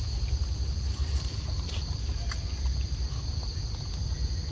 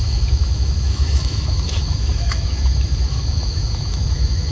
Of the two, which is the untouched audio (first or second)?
first